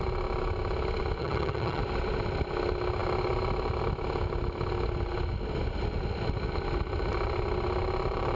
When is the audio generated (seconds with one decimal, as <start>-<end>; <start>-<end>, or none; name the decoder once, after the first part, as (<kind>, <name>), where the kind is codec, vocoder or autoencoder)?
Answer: 1.2-1.8 (vocoder, HiFi-GAN)